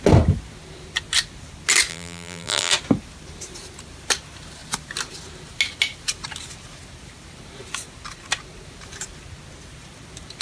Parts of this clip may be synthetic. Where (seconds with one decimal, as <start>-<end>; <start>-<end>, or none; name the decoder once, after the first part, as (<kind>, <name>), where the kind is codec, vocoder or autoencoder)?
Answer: 1.9-2.7 (vocoder, BigVGAN v2)